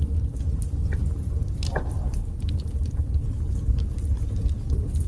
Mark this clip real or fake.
real